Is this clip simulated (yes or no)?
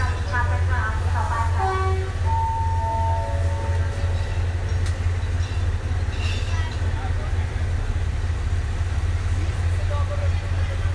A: no